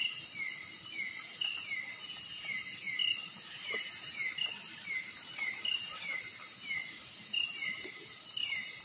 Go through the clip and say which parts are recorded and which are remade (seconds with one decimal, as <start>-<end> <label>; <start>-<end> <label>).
0.0-0.6 remade; 0.6-1.2 recorded; 1.2-8.8 remade